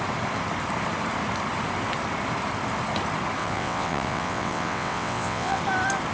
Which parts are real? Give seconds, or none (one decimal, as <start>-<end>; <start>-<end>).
0.0-3.4; 5.6-6.1